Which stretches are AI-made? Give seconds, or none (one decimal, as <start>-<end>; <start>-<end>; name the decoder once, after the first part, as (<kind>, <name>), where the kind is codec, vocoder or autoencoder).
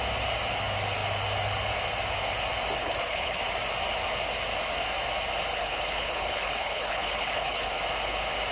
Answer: 2.8-3.4 (codec, HILCodec); 5.5-7.8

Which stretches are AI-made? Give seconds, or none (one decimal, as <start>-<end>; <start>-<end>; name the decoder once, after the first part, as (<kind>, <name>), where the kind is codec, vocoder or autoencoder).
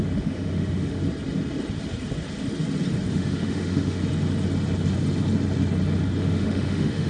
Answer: 0.0-1.0 (autoencoder, DAC-VAE); 3.1-4.0; 6.2-7.1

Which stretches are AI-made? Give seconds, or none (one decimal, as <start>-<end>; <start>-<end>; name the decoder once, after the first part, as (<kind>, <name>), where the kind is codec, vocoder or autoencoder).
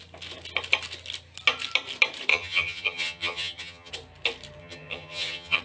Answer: 2.3-3.9 (vocoder, HiFi-GAN); 4.6-5.6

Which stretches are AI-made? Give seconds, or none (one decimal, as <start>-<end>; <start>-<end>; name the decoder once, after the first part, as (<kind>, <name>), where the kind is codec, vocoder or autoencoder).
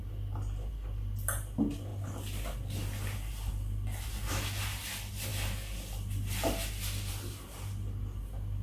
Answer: none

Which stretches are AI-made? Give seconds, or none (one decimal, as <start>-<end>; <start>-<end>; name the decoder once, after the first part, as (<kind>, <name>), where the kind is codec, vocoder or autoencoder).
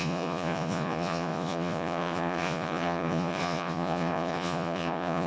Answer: 0.0-5.3 (vocoder, Vocos)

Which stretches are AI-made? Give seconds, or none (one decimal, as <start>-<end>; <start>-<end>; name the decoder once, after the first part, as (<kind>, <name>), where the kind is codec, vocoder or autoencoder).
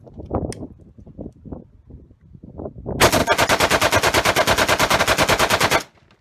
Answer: none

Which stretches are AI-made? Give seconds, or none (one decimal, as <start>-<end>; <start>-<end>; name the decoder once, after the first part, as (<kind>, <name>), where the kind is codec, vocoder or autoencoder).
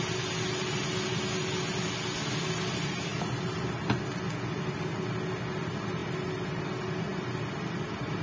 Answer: none